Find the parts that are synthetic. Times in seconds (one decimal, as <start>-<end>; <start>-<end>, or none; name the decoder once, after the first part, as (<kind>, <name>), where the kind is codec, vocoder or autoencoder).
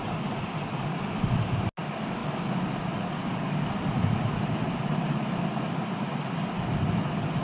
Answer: none